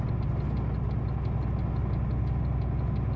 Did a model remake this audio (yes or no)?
no